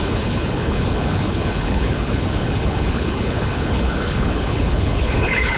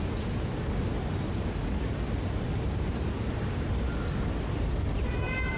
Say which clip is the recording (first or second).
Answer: second